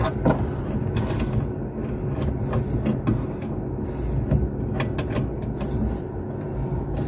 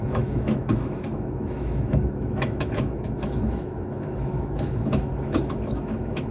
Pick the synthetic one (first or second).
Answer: second